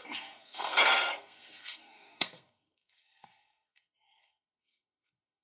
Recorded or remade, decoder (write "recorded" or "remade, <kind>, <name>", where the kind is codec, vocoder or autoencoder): remade, codec, SNAC